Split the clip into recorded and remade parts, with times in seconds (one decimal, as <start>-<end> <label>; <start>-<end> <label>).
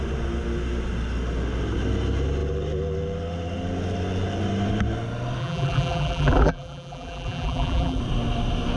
0.0-5.4 recorded; 5.4-8.0 remade; 8.0-8.8 recorded